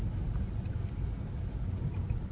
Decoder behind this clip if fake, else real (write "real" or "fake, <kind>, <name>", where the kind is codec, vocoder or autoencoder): real